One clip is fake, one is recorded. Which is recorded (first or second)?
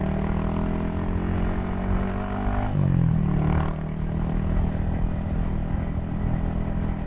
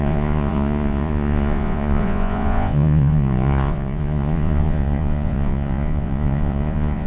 first